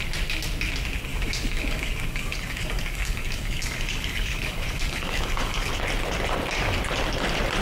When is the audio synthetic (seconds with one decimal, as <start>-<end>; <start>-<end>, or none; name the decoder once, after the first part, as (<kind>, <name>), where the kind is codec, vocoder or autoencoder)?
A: 1.1-5.7 (codec, DAC)